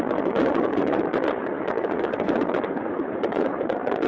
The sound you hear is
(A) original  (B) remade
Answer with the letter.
B